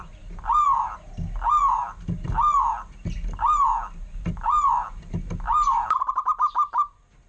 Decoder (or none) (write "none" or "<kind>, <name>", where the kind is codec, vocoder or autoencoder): none